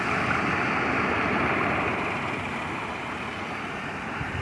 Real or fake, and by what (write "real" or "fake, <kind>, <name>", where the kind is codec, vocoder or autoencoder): real